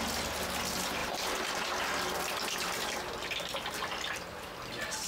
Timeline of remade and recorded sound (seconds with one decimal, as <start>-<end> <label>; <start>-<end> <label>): 0.0-1.0 recorded; 1.0-1.8 remade; 1.8-5.1 recorded